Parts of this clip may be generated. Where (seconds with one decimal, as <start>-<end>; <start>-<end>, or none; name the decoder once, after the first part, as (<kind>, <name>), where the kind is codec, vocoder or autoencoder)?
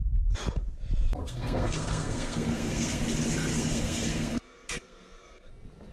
1.2-3.0 (codec, SNAC); 3.5-5.5